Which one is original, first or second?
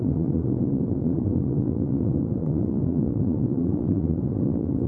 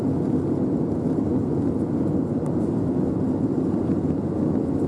second